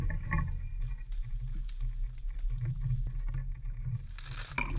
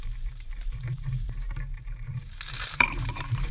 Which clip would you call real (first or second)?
first